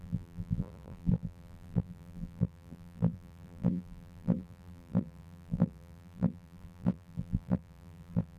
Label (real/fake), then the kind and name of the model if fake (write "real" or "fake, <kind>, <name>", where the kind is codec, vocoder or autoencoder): fake, vocoder, BigVGAN v2